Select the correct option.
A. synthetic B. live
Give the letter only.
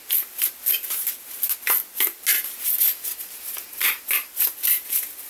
B